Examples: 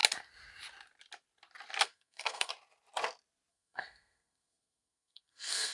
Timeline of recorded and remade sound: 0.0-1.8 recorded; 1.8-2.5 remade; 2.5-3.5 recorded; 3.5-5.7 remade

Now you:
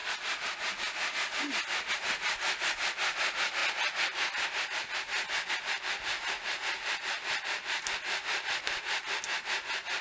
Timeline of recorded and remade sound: 0.0-10.0 recorded

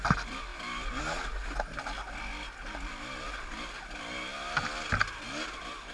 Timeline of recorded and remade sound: 0.0-5.9 recorded

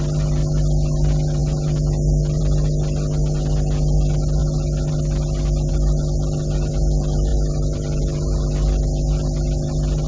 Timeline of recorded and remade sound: 0.0-10.1 recorded

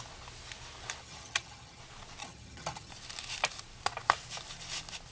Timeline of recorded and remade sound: 0.0-1.0 recorded; 1.0-1.8 remade; 1.8-2.2 recorded; 2.2-2.9 remade; 2.9-5.1 recorded

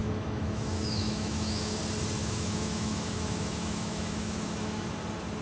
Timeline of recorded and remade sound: 0.0-1.8 remade; 1.8-2.2 recorded; 2.2-4.9 remade; 4.9-5.4 recorded

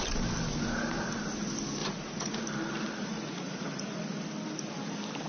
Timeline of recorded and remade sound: 0.0-1.8 recorded; 1.8-2.4 remade; 2.4-3.0 recorded; 3.0-4.0 remade; 4.0-5.3 recorded

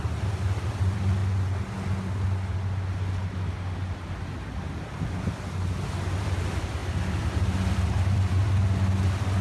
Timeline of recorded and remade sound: 0.0-1.2 remade; 1.2-6.2 recorded; 6.2-9.4 remade